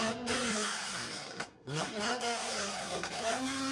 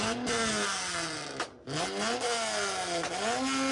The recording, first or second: second